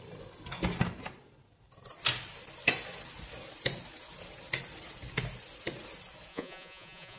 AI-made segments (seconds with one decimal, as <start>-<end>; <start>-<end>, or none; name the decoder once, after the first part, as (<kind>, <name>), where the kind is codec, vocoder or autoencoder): 6.3-7.2 (vocoder, Vocos)